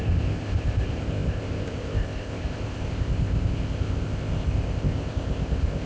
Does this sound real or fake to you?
fake